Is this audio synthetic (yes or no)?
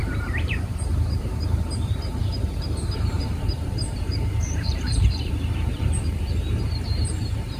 yes